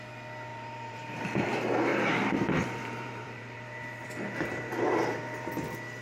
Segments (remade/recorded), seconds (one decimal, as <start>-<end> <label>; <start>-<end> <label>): 0.0-0.5 recorded; 0.5-1.2 remade; 1.2-1.9 recorded; 1.9-5.5 remade; 5.5-6.0 recorded